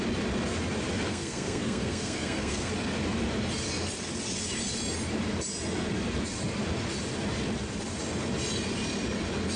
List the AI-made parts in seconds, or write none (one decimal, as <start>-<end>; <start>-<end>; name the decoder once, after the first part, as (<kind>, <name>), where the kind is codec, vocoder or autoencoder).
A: 1.1-2.7 (codec, SNAC)